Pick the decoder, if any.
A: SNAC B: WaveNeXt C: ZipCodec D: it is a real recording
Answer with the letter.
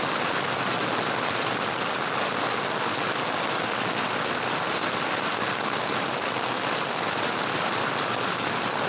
D